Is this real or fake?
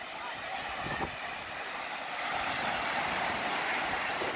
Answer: real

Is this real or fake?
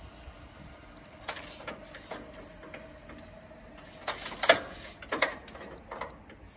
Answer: real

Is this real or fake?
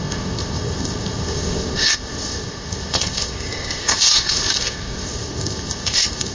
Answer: fake